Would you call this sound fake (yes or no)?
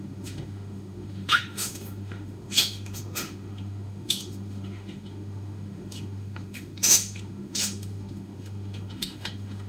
yes